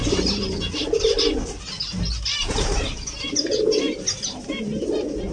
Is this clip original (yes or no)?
yes